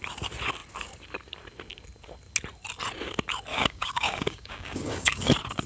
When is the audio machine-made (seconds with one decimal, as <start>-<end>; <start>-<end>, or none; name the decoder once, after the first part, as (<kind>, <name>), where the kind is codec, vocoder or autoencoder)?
3.5-5.3 (codec, DAC)